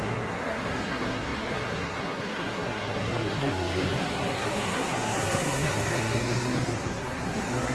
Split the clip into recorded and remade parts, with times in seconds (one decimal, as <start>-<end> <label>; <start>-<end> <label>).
0.0-7.7 remade